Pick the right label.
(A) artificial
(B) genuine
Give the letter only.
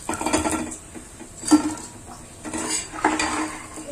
B